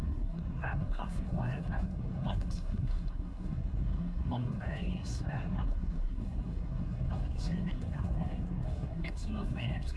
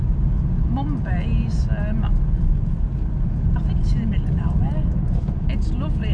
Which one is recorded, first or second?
second